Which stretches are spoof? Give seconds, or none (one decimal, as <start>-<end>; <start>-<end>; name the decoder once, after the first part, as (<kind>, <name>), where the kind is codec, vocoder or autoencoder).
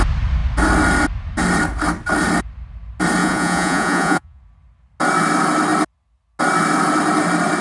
3.2-4.4 (vocoder, Vocos)